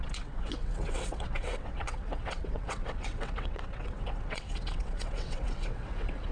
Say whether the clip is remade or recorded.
remade